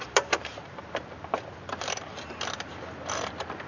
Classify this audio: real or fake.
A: fake